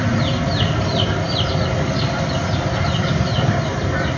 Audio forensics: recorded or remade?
recorded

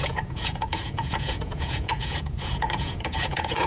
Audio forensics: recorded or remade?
remade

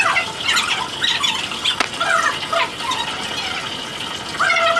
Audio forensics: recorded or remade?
recorded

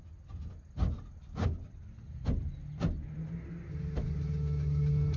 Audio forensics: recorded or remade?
recorded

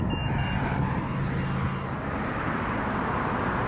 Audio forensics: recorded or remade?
recorded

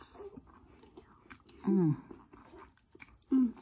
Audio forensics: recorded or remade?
recorded